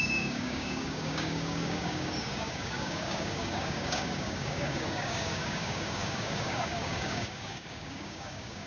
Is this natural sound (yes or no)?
no